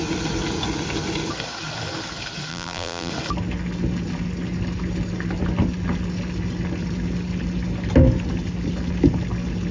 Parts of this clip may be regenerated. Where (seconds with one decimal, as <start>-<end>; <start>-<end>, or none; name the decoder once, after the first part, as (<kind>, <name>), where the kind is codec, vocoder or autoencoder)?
2.5-3.1 (vocoder, BigVGAN v2)